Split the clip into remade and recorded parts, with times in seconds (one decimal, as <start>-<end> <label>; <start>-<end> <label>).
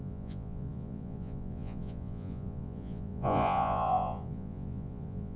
0.0-5.4 remade